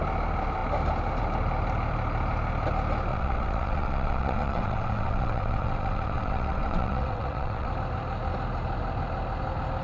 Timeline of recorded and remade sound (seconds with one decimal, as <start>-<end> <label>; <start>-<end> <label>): 0.0-3.1 recorded; 3.1-7.7 remade; 7.7-9.8 recorded